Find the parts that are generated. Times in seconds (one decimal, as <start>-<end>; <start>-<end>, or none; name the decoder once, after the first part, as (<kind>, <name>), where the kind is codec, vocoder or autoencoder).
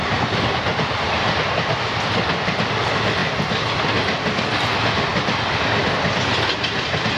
0.7-2.8 (vocoder, BigVGAN v2)